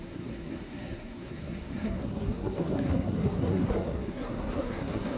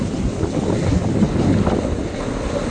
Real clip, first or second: second